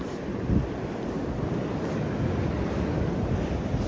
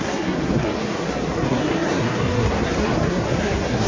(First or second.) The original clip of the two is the first